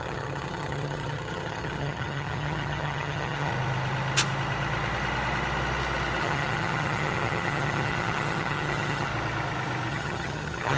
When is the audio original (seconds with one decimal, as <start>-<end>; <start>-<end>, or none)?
3.5-6.2; 9.1-9.9